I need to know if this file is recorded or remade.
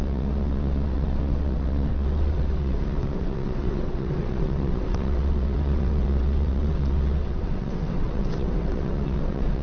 remade